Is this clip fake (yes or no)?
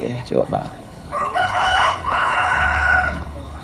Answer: yes